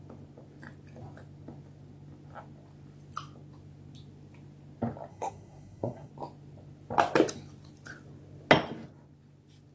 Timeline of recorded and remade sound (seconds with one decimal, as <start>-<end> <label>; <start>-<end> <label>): 0.0-5.1 recorded; 5.1-6.1 remade; 6.1-9.7 recorded

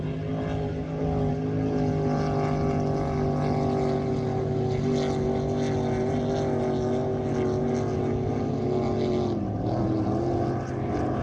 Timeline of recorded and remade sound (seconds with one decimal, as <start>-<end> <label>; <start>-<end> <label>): 0.0-11.2 recorded

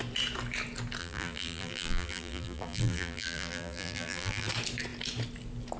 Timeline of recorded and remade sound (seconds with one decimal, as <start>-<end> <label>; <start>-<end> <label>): 0.0-1.0 recorded; 1.0-4.5 remade; 4.5-5.8 recorded

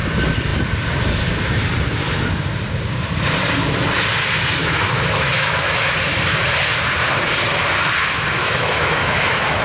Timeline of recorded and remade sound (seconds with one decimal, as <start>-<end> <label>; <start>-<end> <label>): 0.0-4.6 recorded; 4.6-6.0 remade; 6.0-8.4 recorded; 8.4-9.6 remade

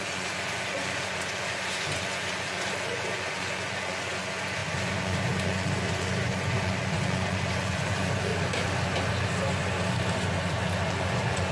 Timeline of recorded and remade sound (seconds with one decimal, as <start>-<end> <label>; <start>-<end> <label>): 0.0-8.3 remade; 8.3-10.9 recorded; 10.9-11.5 remade

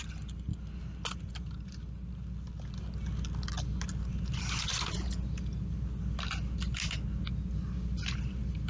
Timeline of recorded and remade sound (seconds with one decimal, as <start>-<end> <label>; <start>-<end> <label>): 0.0-8.7 recorded

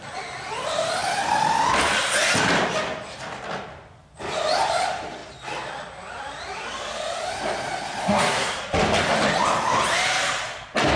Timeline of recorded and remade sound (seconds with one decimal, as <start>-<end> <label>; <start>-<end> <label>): 0.0-8.0 recorded; 8.0-8.6 remade; 8.6-11.0 recorded

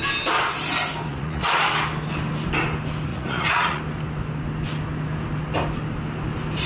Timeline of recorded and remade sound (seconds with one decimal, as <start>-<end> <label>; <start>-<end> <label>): 0.0-1.1 recorded; 1.1-1.6 remade; 1.6-3.1 recorded; 3.1-3.8 remade; 3.8-6.7 recorded